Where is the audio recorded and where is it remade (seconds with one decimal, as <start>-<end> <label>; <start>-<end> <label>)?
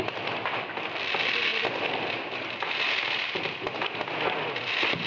0.0-5.1 recorded